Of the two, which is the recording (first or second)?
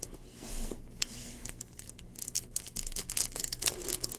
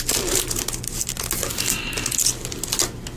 second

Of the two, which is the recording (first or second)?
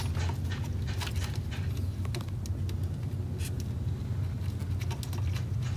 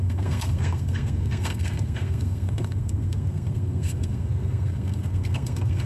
first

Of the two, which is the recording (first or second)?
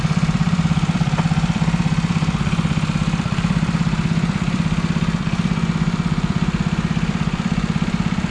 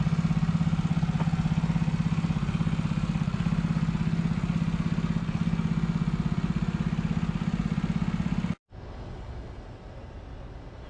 second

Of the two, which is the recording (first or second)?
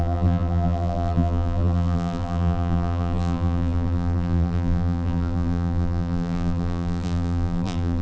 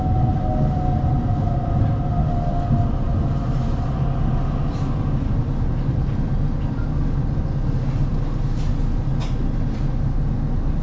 second